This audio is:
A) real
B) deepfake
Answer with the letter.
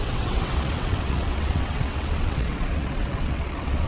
B